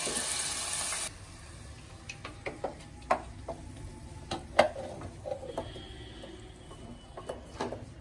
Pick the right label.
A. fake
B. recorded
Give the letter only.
B